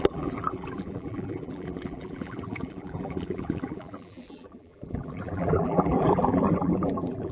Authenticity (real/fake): fake